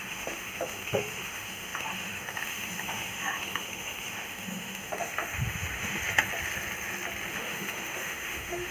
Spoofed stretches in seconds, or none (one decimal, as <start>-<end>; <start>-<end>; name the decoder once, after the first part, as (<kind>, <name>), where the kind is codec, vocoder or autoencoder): 0.0-6.0 (autoencoder, DAC-VAE); 7.3-8.7